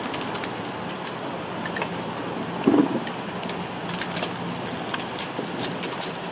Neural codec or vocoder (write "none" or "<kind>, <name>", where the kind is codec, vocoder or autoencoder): none